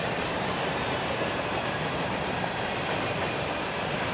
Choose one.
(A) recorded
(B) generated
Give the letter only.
B